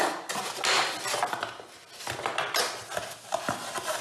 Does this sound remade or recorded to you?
recorded